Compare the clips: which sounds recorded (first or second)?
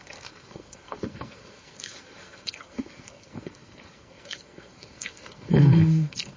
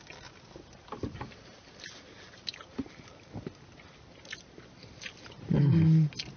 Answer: second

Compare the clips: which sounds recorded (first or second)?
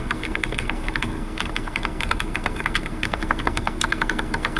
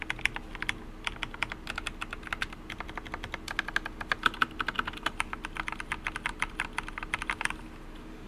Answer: second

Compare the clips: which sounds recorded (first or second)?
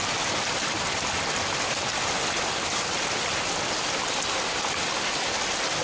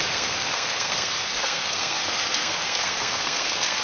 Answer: first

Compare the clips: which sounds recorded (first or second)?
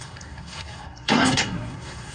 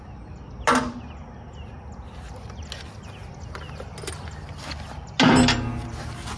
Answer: second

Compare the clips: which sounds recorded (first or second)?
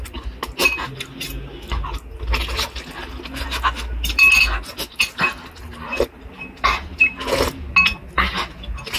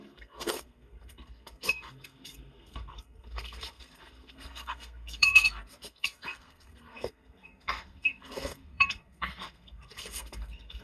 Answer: first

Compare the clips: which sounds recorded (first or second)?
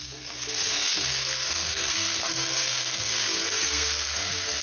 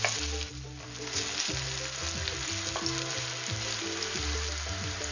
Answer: second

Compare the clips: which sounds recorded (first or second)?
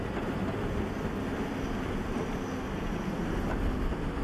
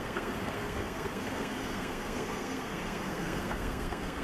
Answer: first